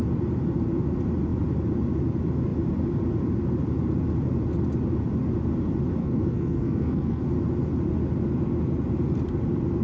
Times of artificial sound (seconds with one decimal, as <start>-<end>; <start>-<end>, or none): 6.0-7.2